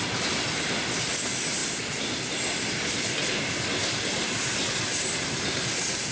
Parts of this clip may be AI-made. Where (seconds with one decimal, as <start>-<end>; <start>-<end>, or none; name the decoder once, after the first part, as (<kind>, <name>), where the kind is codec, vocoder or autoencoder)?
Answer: none